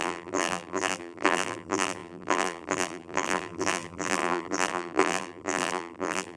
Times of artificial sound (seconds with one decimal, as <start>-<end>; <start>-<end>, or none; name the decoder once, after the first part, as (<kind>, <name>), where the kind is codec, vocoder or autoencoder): 0.0-6.4 (vocoder, BigVGAN v2)